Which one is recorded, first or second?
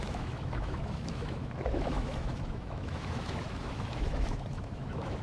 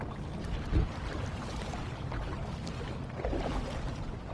second